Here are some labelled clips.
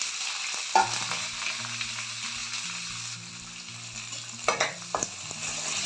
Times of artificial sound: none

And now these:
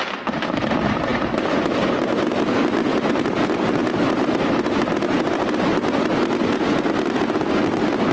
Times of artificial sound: none